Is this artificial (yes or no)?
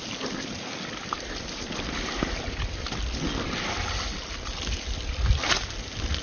no